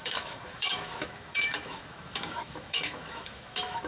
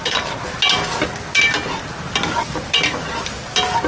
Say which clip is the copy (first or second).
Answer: first